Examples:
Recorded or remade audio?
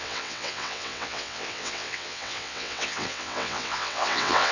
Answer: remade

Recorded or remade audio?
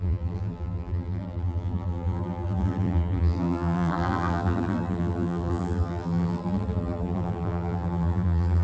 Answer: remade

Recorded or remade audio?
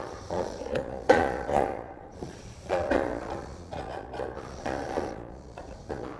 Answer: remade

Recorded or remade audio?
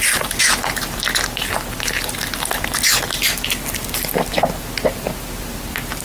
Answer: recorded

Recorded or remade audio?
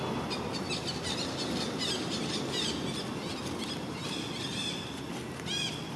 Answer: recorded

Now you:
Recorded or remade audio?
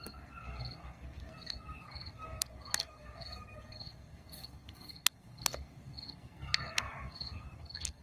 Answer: remade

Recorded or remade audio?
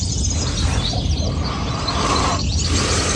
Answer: recorded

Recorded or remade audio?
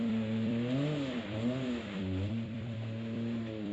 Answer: remade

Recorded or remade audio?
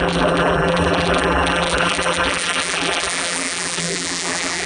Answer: remade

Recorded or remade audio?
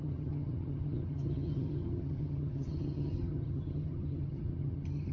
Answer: remade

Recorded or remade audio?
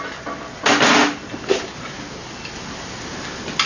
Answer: recorded